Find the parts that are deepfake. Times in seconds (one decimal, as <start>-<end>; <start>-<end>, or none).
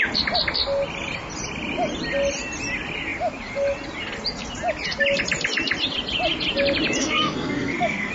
7.0-8.1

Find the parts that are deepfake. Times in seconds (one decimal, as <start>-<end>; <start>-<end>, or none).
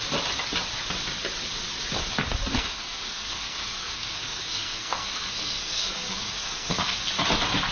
2.5-7.0